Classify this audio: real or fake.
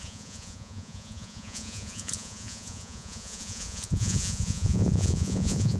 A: fake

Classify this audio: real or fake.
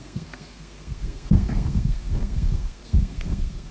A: fake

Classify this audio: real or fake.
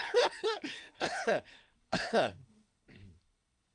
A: fake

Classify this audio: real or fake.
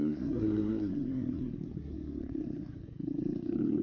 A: fake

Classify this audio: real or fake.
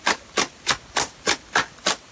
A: real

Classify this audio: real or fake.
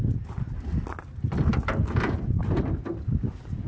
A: real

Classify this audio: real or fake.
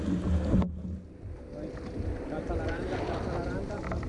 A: real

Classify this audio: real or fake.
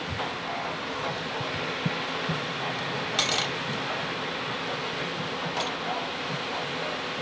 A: real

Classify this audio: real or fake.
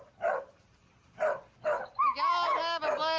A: real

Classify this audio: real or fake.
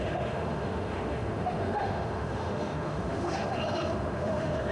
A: fake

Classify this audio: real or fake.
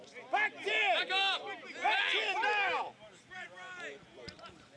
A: real